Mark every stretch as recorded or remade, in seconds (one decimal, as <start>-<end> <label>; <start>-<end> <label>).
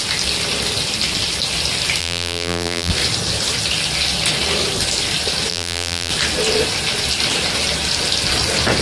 0.0-2.0 recorded; 2.0-2.9 remade; 2.9-5.5 recorded; 5.5-6.1 remade; 6.1-8.8 recorded